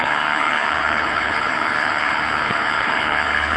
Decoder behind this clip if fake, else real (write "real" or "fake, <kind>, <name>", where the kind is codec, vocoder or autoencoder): fake, codec, HILCodec